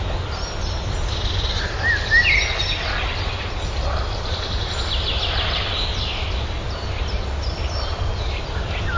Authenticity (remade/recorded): recorded